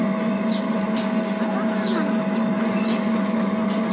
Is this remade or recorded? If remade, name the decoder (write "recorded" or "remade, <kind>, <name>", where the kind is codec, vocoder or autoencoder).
recorded